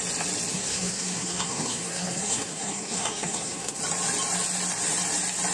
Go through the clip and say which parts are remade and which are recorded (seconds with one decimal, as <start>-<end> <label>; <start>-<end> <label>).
0.0-0.5 recorded; 0.5-3.8 remade; 3.8-5.5 recorded